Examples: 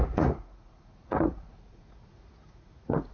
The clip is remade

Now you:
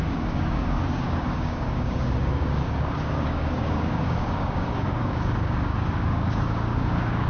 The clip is remade